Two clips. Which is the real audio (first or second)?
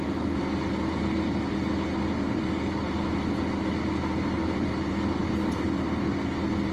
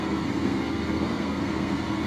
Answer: first